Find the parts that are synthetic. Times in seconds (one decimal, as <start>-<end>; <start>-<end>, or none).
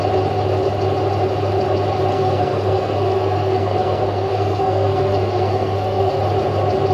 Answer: 2.1-6.2